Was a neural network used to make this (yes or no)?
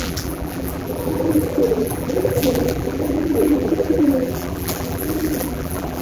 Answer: yes